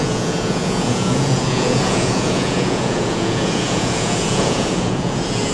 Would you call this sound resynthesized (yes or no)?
yes